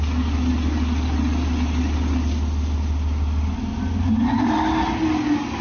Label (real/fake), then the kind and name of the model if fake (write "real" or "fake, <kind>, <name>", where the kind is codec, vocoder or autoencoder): real